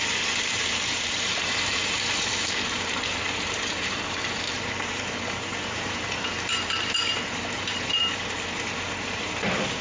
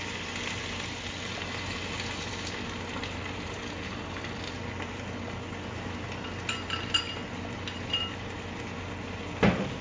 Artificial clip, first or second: first